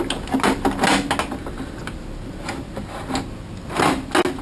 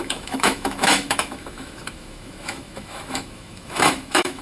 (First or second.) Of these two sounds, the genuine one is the first